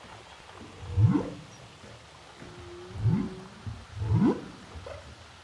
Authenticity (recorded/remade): recorded